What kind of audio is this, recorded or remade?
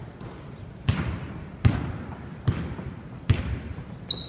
recorded